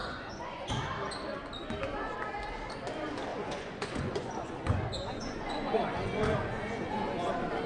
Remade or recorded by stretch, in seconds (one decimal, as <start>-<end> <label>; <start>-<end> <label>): 0.0-0.7 remade; 0.7-3.3 recorded; 3.3-7.3 remade; 7.3-7.7 recorded